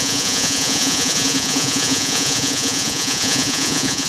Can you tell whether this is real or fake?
fake